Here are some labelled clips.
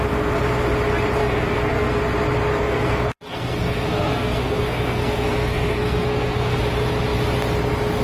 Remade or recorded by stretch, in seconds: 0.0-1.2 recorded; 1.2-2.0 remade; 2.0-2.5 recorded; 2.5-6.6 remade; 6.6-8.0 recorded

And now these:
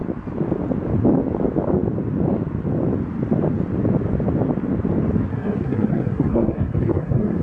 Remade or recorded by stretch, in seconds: 0.0-5.3 recorded; 5.3-7.4 remade

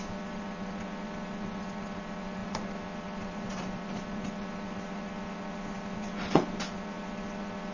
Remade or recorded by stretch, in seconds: 0.0-7.7 remade